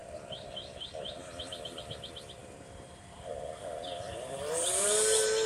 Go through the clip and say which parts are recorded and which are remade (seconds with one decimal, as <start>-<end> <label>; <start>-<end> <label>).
0.0-2.4 recorded; 2.4-4.8 remade; 4.8-5.5 recorded